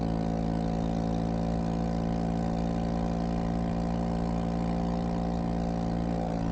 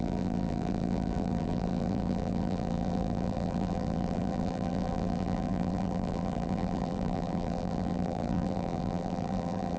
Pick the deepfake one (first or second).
second